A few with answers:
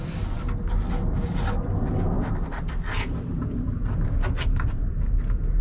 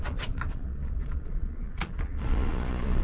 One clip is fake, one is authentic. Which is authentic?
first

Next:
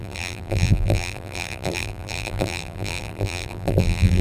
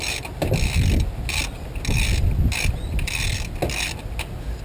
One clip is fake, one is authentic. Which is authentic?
second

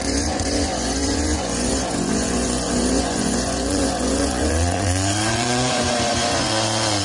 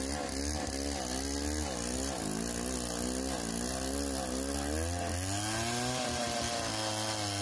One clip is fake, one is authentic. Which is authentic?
second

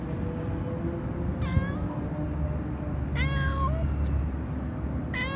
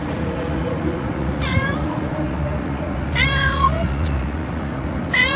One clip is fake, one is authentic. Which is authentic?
first